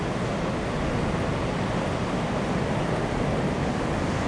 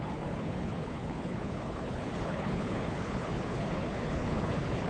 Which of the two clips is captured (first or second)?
first